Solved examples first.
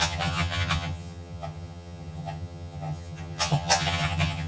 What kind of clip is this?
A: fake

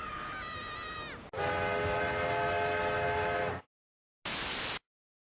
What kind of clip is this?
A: real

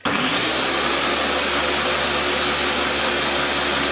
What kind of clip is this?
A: real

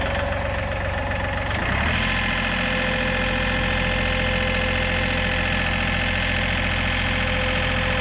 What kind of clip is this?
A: real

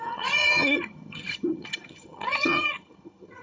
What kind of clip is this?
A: fake